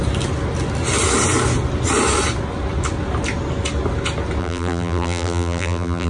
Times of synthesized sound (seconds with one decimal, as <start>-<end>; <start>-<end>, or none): 4.4-6.1